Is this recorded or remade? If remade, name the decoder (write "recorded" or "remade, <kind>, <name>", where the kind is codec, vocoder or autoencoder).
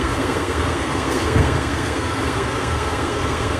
remade, codec, SNAC